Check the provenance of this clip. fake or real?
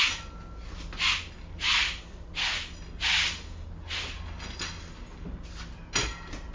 real